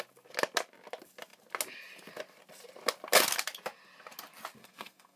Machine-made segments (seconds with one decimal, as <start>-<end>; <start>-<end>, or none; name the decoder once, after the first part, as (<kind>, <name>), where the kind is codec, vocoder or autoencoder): 4.6-5.2 (codec, SNAC)